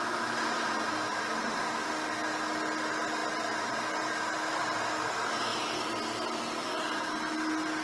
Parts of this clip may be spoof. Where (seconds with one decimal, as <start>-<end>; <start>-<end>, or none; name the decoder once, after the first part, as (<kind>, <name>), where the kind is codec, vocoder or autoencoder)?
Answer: 1.4-2.1 (autoencoder, DAC-VAE)